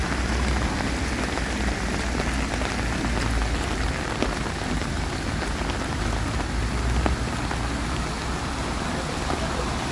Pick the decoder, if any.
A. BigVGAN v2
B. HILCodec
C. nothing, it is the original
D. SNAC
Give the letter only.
C